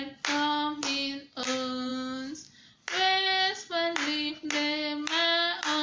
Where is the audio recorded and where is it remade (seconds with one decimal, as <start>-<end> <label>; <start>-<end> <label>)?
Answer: 0.0-5.8 recorded